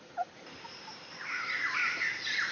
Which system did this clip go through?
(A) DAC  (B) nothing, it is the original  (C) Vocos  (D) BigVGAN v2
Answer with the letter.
B